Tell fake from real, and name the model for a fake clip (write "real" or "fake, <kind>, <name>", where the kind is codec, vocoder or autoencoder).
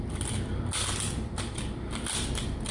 real